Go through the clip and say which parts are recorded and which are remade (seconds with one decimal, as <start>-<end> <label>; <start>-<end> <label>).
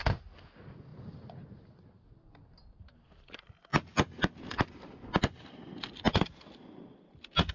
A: 0.0-7.5 recorded